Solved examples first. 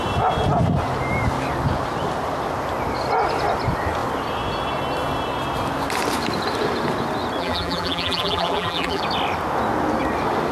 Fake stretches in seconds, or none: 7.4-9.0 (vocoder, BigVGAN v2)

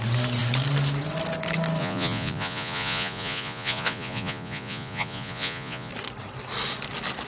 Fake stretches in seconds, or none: 1.8-5.9 (vocoder, Vocos)

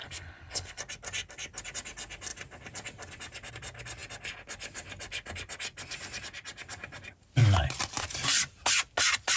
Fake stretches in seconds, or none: 0.0-0.8 (codec, HILCodec)

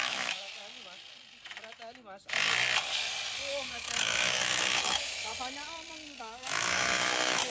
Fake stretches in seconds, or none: 0.0-0.5 (autoencoder, DAC-VAE); 3.5-5.3; 6.2-7.5

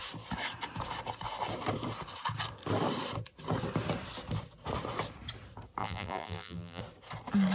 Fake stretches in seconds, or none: 5.8-6.8 (vocoder, BigVGAN v2)